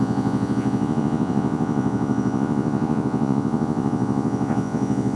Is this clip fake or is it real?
fake